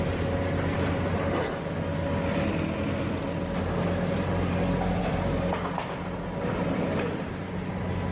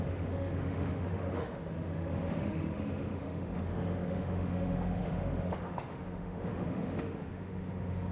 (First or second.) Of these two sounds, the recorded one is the first